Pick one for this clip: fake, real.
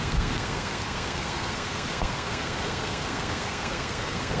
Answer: fake